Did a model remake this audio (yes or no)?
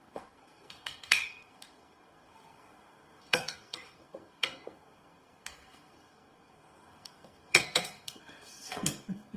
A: yes